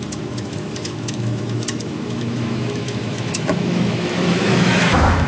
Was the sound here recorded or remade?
remade